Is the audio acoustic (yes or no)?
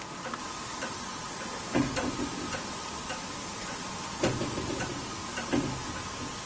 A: yes